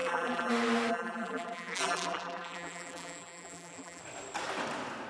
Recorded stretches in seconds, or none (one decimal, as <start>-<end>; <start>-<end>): 0.5-0.9; 4.0-5.1